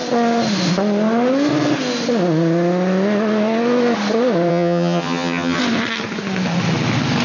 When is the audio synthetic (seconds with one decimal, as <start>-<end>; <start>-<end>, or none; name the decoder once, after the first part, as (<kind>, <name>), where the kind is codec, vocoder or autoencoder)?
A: 4.5-5.6 (vocoder, HiFi-GAN)